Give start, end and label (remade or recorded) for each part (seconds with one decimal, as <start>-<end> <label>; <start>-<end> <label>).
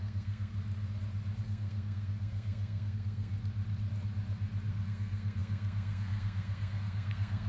0.0-0.5 remade; 0.5-1.4 recorded; 1.4-3.3 remade; 3.3-4.7 recorded; 4.7-7.5 remade